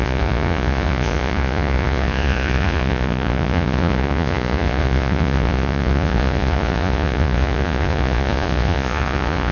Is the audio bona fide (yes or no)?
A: no